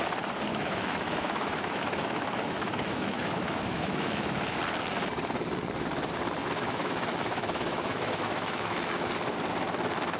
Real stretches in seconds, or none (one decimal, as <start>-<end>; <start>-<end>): 0.0-0.5; 4.6-6.4; 9.1-10.2